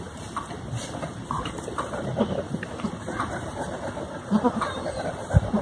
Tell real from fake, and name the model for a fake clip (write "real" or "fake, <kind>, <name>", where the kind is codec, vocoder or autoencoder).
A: fake, vocoder, BigVGAN v2